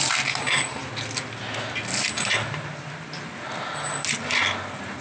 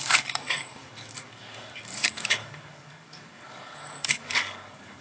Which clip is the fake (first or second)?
second